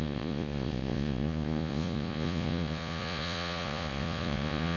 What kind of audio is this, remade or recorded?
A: remade